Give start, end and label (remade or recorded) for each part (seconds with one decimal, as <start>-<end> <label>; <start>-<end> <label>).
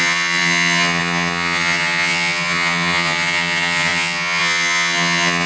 0.0-5.5 remade